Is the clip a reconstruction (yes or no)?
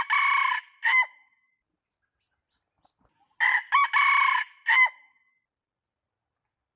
no